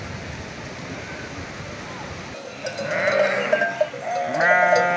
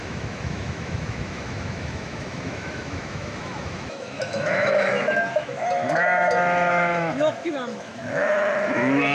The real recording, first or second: first